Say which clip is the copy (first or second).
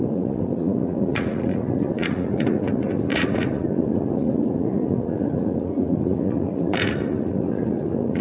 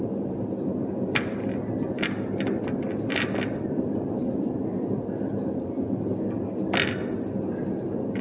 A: first